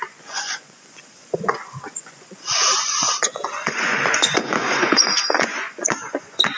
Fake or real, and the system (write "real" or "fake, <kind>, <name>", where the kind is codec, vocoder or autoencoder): fake, vocoder, Vocos